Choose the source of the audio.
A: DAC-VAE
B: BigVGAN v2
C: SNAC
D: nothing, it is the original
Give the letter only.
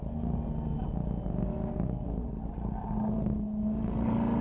D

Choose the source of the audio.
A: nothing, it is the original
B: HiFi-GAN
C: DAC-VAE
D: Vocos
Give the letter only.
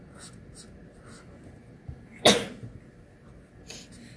A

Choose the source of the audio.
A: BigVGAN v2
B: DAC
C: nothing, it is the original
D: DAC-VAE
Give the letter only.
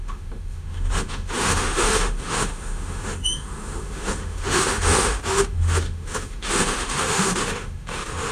D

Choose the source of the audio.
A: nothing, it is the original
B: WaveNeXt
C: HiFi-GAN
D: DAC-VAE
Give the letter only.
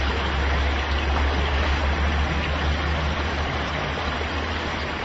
A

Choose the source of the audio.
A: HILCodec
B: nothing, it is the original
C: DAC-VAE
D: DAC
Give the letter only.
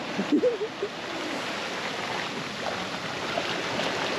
B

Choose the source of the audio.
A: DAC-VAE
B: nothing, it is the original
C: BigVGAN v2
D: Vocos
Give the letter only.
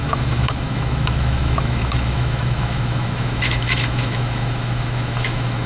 A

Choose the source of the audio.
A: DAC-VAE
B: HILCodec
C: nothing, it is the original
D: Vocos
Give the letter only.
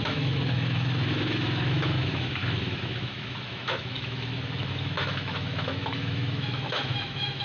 A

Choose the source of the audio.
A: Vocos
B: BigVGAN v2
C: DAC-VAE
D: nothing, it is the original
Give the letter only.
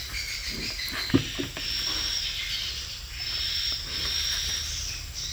D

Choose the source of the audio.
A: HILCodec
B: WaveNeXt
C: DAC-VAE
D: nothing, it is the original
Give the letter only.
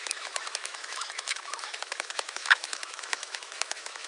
C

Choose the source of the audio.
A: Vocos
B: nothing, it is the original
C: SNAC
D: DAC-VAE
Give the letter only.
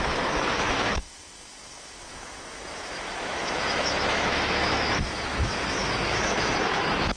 D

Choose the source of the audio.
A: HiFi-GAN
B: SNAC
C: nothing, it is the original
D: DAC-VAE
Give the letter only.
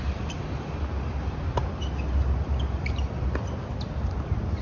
C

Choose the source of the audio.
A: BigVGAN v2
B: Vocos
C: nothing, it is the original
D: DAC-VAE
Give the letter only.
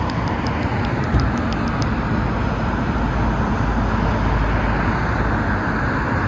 C